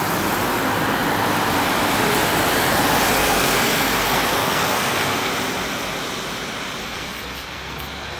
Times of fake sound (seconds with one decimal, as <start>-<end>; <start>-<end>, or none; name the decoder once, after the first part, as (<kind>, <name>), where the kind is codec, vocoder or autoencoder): 3.2-5.3 (codec, SNAC); 6.8-8.2

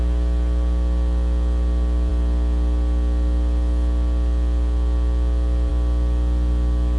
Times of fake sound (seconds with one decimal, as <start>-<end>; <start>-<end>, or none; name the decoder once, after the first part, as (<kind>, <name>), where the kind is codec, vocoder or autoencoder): none

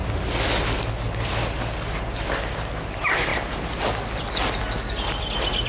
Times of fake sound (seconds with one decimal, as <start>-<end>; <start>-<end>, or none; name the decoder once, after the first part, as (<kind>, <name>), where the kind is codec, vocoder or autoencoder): none

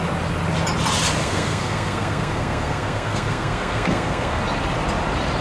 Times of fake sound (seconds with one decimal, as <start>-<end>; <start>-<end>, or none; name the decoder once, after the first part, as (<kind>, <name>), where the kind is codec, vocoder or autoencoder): 1.2-4.4 (codec, SNAC)

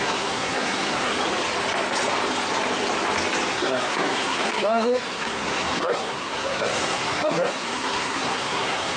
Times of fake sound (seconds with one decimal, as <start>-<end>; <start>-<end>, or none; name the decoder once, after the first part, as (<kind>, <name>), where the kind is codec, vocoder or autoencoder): 0.0-1.1 (codec, SNAC); 3.5-9.0

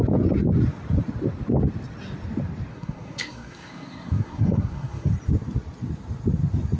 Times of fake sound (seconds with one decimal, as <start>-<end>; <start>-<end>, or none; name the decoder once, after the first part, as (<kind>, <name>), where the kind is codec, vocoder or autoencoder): 2.7-5.1 (codec, SNAC)